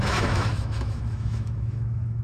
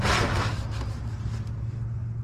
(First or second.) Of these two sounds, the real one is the second